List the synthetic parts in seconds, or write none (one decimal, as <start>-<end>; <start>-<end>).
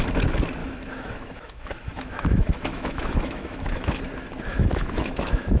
0.6-4.0; 4.5-5.6